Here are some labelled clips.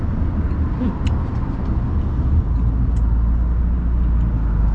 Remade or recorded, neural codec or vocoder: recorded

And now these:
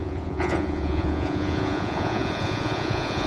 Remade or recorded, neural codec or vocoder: remade, vocoder, Vocos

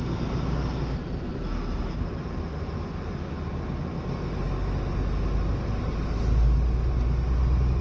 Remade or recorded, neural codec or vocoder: recorded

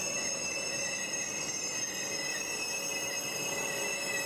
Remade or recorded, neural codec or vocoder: recorded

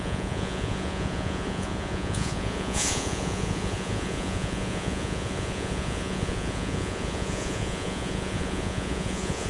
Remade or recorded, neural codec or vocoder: remade, vocoder, Vocos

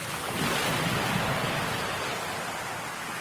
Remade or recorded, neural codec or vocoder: recorded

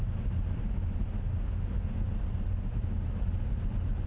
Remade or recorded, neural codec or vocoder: recorded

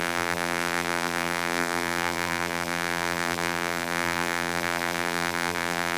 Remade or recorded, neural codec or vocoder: remade, vocoder, BigVGAN v2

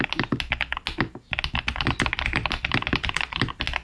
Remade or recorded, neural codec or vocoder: recorded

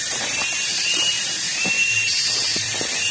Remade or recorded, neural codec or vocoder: remade, vocoder, BigVGAN v2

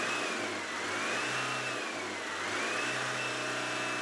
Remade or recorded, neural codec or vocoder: recorded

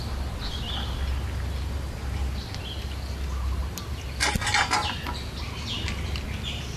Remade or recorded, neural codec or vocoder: recorded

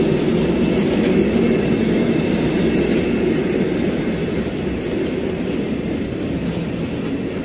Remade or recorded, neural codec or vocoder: recorded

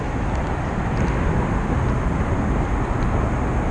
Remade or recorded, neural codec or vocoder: recorded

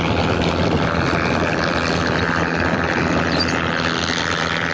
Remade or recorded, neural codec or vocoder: recorded